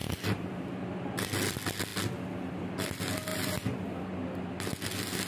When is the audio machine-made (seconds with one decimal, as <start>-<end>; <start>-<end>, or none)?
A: 0.0-0.6; 3.3-4.2